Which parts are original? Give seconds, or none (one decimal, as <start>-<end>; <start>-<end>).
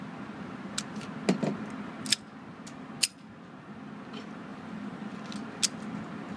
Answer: 0.0-4.5; 5.1-6.4